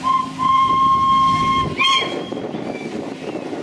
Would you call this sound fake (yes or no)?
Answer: no